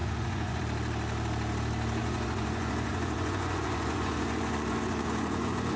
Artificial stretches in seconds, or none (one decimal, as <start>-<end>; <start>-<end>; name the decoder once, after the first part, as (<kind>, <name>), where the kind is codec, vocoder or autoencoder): 0.0-0.6 (vocoder, Vocos); 2.0-5.8